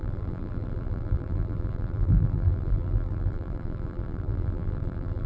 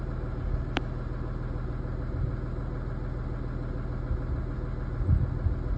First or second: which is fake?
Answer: first